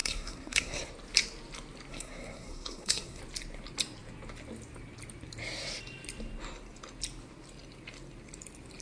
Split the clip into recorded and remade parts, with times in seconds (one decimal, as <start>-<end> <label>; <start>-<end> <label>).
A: 0.0-0.8 remade; 0.8-1.9 recorded; 1.9-3.2 remade; 3.2-8.8 recorded